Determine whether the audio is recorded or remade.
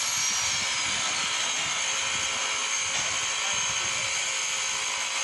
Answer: recorded